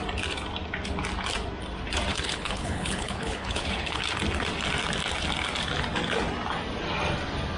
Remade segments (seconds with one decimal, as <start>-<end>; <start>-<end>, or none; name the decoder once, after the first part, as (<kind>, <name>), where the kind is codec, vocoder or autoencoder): 2.1-4.0 (codec, HILCodec)